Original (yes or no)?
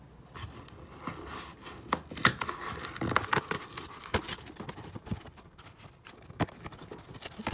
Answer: yes